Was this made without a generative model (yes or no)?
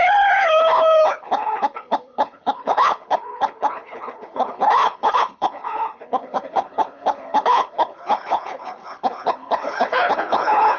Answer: no